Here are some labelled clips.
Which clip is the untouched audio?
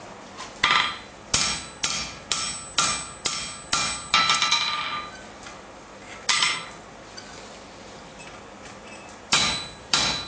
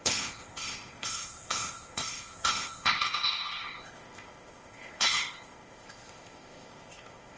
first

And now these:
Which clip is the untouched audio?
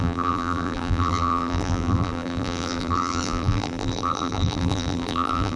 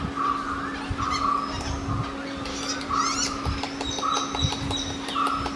second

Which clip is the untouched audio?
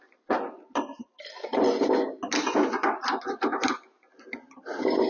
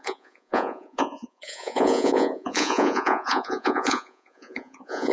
first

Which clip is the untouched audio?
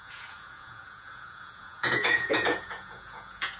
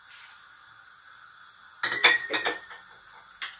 second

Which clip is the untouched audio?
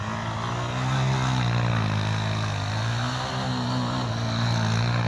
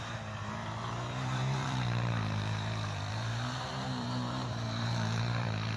first